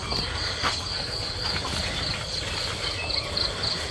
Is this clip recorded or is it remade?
recorded